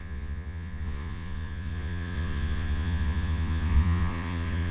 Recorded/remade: remade